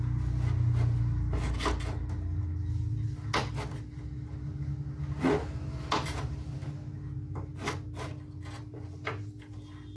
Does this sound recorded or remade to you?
recorded